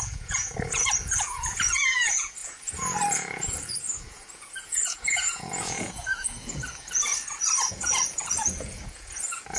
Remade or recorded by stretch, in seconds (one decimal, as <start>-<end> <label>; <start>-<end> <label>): 0.0-7.1 remade; 7.1-7.7 recorded; 7.7-9.6 remade

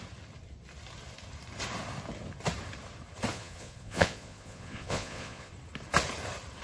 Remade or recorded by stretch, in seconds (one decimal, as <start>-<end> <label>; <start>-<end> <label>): 0.0-3.3 recorded; 3.3-5.5 remade; 5.5-6.6 recorded

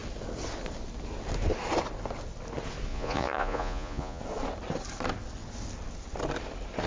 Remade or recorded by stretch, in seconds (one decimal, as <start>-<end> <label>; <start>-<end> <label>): 0.0-2.9 recorded; 2.9-4.2 remade; 4.2-6.9 recorded

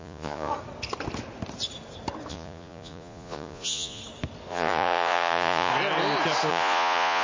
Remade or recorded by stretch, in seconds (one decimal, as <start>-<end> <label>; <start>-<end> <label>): 0.0-0.5 remade; 0.5-2.3 recorded; 2.3-4.0 remade; 4.0-4.5 recorded; 4.5-5.7 remade; 5.7-6.5 recorded; 6.5-7.2 remade